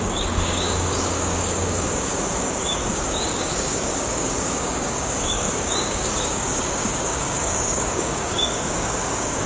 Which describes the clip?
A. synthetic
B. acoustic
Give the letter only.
A